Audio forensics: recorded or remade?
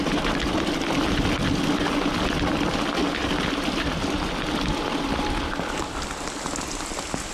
recorded